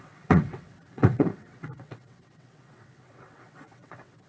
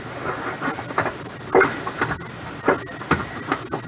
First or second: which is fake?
first